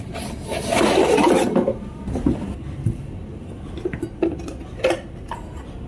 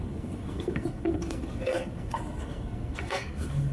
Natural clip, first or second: first